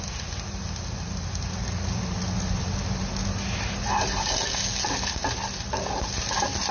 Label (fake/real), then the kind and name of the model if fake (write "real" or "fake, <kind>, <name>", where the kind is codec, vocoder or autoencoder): real